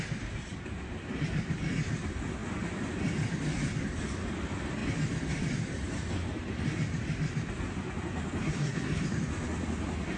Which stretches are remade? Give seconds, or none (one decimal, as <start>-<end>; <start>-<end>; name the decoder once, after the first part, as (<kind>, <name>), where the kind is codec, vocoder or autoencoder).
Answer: 8.4-9.0 (codec, SNAC)